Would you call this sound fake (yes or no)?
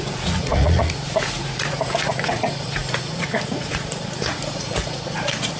yes